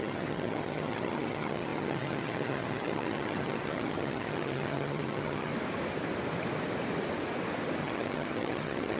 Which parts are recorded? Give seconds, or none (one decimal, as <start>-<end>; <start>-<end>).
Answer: 5.5-7.8